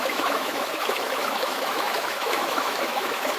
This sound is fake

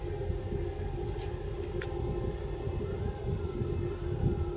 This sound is real